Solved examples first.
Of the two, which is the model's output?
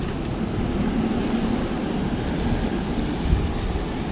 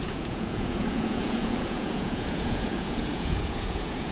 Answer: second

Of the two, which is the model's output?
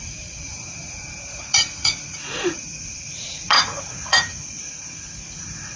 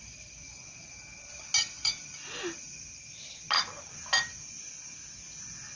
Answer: first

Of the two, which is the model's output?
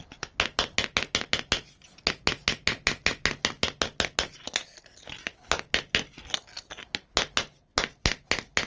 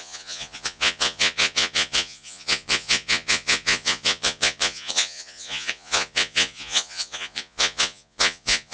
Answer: second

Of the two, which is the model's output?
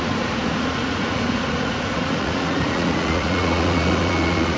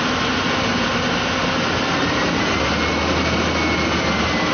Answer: first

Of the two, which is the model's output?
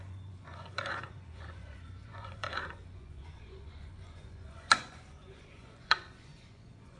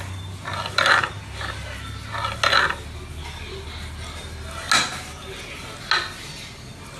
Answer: first